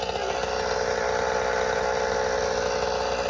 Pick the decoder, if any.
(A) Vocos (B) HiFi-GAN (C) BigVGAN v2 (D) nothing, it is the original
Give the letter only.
D